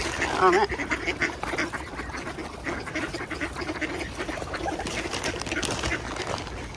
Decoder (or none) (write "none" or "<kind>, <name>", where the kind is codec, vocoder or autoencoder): none